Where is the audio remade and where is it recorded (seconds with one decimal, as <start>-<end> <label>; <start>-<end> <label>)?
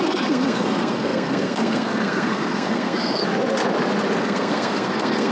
0.0-3.2 remade; 3.2-4.2 recorded; 4.2-5.3 remade